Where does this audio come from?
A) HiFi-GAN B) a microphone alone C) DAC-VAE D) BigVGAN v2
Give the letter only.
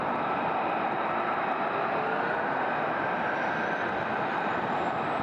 B